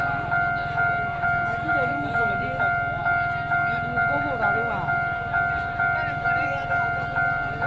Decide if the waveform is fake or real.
real